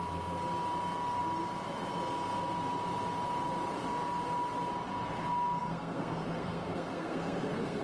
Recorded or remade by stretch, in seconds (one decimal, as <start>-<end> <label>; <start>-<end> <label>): 0.0-5.6 recorded; 5.6-7.8 remade